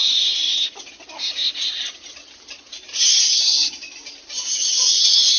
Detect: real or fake real